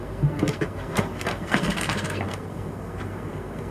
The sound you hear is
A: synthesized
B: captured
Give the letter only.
A